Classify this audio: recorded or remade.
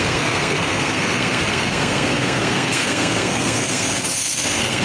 remade